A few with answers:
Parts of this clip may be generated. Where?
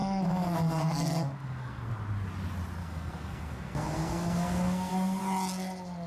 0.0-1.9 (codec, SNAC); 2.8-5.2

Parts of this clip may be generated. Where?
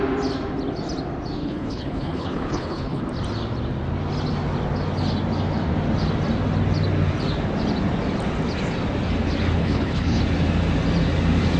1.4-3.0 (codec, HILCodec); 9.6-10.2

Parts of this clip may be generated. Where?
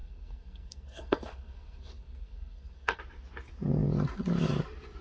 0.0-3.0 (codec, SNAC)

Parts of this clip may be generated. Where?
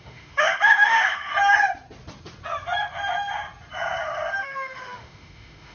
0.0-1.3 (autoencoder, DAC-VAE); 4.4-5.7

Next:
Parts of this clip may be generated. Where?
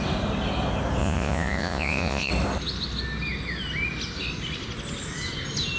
1.0-2.3 (vocoder, Vocos)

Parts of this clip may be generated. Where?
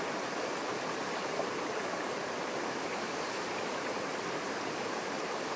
1.5-4.1 (vocoder, BigVGAN v2); 4.8-5.6